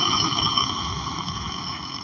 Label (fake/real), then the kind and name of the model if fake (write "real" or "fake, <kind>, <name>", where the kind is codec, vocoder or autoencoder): fake, autoencoder, DAC-VAE